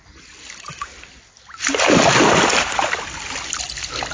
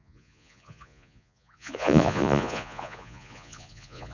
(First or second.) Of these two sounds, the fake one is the second